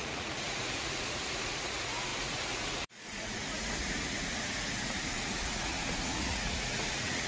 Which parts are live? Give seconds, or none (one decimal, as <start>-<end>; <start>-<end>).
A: none